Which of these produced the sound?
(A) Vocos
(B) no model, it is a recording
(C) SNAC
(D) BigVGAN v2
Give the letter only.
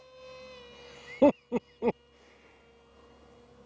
B